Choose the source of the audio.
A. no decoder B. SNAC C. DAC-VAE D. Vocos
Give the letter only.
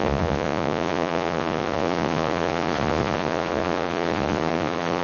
D